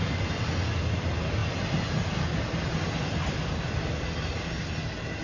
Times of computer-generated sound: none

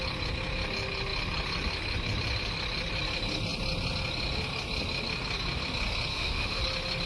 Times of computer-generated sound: 6.1-6.6 (autoencoder, DAC-VAE)

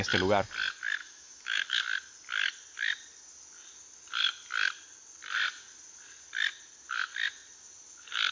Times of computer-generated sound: 1.0-1.8 (autoencoder, DAC-VAE)

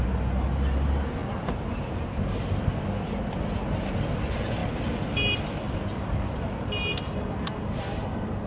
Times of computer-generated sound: none

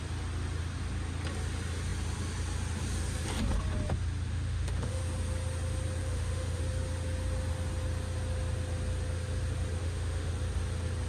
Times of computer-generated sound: 4.3-5.0 (autoencoder, DAC-VAE); 6.0-6.6; 9.8-10.3

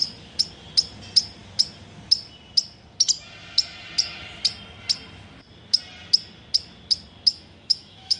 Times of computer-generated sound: 7.3-8.2 (autoencoder, DAC-VAE)

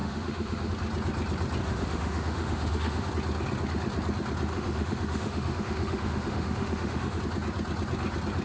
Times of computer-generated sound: 0.0-0.7 (autoencoder, DAC-VAE); 1.6-3.1; 4.5-7.2